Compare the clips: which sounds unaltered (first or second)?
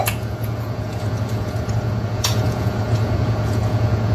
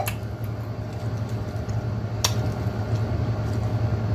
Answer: second